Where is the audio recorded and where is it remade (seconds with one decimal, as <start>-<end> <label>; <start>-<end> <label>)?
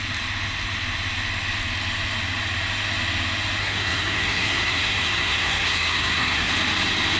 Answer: 0.0-3.6 recorded; 3.6-6.5 remade; 6.5-7.2 recorded